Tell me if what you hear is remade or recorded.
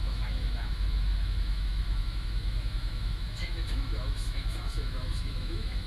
remade